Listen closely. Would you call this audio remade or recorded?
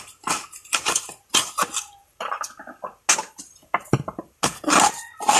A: recorded